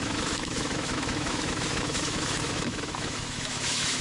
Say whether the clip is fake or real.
fake